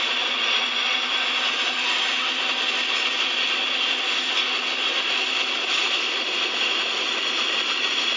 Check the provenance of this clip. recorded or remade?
recorded